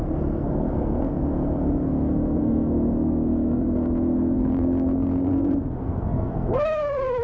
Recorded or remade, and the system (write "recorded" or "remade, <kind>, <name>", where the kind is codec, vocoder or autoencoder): remade, codec, SNAC